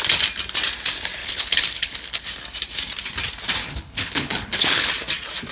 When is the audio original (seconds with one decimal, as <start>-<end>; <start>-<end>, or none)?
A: 0.0-1.2; 2.2-3.6; 4.9-5.5